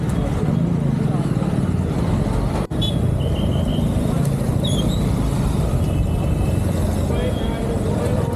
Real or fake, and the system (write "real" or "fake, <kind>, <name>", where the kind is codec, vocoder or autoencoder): real